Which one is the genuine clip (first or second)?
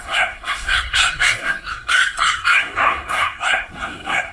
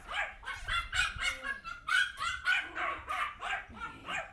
second